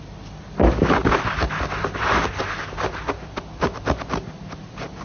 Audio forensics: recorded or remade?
recorded